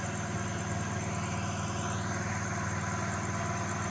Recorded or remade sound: recorded